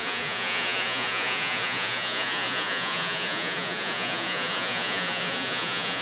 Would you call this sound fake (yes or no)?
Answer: yes